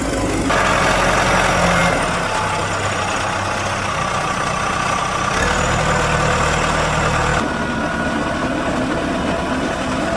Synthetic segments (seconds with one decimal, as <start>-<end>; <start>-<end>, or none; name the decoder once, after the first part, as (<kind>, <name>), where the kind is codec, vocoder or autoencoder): none

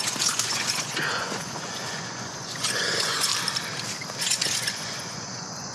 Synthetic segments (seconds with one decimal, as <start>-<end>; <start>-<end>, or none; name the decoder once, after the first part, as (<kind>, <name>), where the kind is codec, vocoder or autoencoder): 0.0-3.3 (vocoder, Vocos); 4.2-5.7

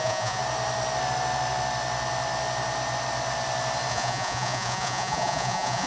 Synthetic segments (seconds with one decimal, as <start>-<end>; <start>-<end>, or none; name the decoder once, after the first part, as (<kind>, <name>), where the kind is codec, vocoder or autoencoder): 0.0-0.4 (vocoder, Vocos); 3.9-5.9

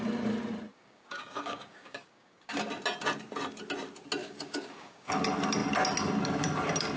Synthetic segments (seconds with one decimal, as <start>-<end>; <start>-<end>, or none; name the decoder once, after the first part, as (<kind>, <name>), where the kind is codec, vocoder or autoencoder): 0.7-2.7 (codec, DAC); 4.2-5.1